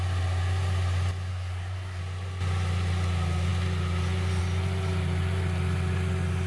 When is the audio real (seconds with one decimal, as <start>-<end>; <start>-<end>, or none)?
0.0-1.3; 2.0-6.5